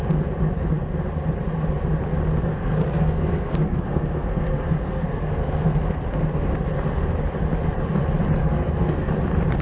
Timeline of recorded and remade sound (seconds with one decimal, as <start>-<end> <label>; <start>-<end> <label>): 0.0-2.5 recorded; 2.5-6.5 remade; 6.5-8.4 recorded; 8.4-9.1 remade; 9.1-9.6 recorded